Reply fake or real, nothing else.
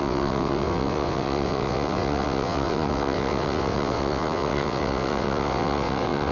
fake